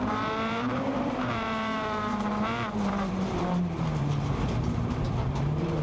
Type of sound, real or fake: fake